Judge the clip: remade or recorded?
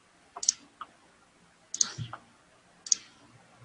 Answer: recorded